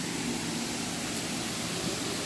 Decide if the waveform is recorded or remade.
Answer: recorded